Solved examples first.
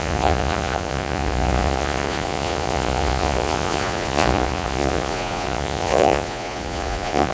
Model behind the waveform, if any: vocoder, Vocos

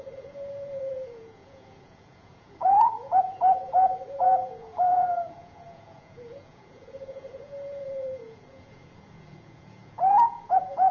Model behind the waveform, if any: vocoder, Vocos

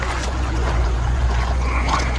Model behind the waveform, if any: vocoder, Vocos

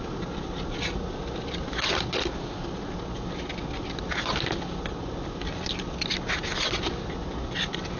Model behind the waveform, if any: none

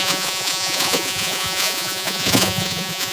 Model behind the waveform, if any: vocoder, Vocos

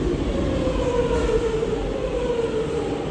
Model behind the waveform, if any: none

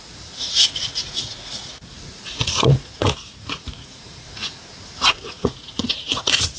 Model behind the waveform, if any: vocoder, Vocos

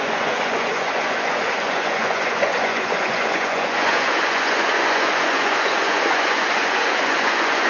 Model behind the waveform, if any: vocoder, Vocos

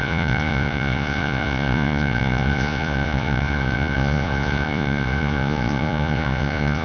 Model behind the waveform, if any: vocoder, Vocos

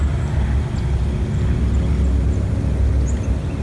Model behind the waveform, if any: none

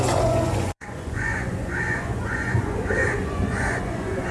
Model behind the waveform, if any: vocoder, Vocos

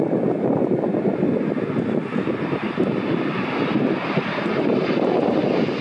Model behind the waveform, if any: none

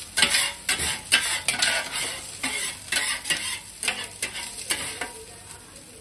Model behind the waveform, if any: none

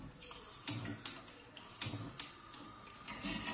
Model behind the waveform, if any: none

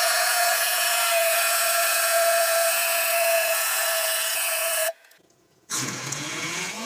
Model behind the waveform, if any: vocoder, Vocos